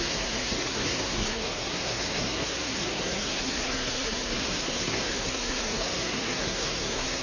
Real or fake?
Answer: fake